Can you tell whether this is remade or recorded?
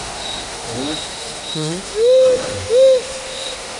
remade